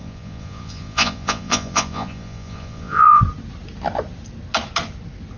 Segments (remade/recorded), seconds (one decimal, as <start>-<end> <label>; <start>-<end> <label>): 0.0-3.2 remade; 3.2-5.4 recorded